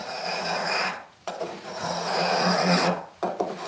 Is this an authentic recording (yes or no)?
no